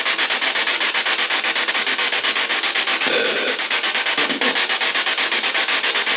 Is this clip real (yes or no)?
yes